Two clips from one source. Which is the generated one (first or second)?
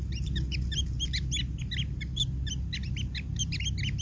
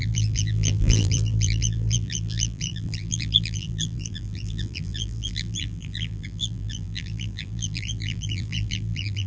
second